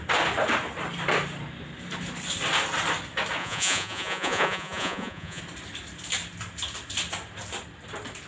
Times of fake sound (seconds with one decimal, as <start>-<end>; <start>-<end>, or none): 3.4-5.4